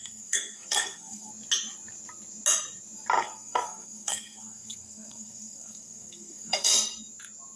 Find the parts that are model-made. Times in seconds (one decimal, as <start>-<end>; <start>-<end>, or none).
0.0-1.3; 3.2-6.7